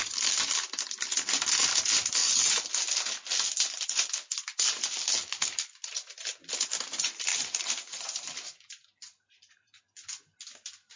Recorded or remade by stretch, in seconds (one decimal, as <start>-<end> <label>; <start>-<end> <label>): 0.0-7.3 recorded; 7.3-9.8 remade; 9.8-11.0 recorded